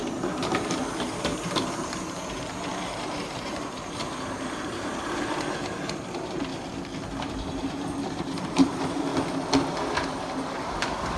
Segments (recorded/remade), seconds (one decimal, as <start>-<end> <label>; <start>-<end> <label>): 0.0-6.5 remade; 6.5-7.2 recorded; 7.2-9.1 remade; 9.1-10.1 recorded; 10.1-11.2 remade